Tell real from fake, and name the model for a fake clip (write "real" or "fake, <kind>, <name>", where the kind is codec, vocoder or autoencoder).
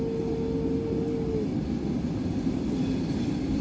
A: real